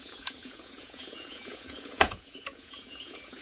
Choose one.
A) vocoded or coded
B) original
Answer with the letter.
A